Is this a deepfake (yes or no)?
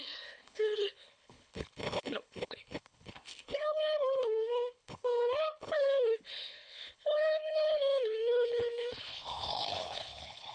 yes